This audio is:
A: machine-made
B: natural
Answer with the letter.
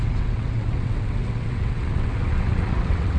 A